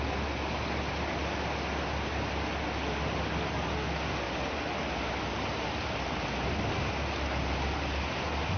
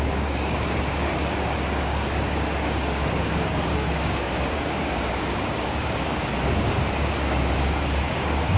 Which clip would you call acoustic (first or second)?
first